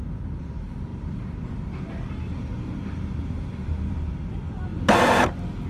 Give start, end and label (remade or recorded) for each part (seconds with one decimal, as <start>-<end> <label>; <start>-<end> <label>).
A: 0.0-0.9 recorded; 0.9-4.3 remade; 4.3-5.7 recorded